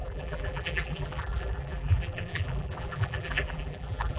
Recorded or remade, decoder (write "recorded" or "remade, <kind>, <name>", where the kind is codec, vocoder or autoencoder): remade, vocoder, BigVGAN v2